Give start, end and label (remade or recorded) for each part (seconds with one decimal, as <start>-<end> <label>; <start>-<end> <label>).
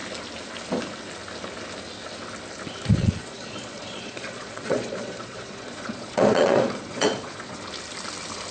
0.0-3.0 recorded; 3.0-7.6 remade; 7.6-8.5 recorded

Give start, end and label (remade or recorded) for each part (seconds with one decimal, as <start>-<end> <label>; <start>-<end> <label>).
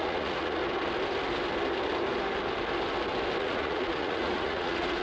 0.0-0.6 remade; 0.6-3.4 recorded; 3.4-5.0 remade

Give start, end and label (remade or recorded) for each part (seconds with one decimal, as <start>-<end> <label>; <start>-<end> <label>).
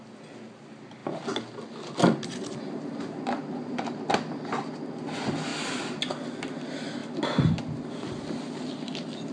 0.0-9.3 recorded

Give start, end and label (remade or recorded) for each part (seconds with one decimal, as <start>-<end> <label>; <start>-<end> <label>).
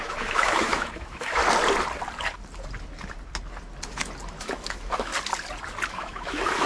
0.0-1.4 remade; 1.4-4.4 recorded; 4.4-5.1 remade; 5.1-5.9 recorded; 5.9-6.7 remade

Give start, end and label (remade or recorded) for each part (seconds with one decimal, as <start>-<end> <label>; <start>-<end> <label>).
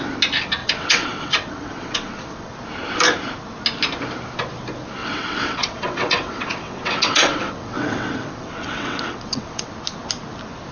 0.0-0.6 recorded; 0.6-2.5 remade; 2.5-5.0 recorded; 5.0-9.7 remade; 9.7-10.7 recorded